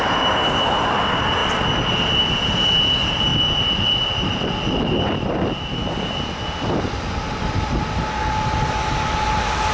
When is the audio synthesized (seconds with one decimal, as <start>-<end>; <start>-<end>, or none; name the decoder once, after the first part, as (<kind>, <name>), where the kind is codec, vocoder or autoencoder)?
none